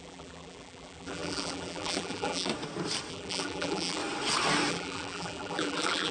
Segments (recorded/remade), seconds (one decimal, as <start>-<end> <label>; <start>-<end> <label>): 0.0-2.5 remade; 2.5-3.1 recorded; 3.1-4.0 remade; 4.0-4.7 recorded; 4.7-6.1 remade